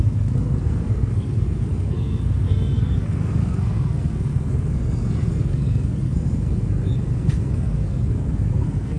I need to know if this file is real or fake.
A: fake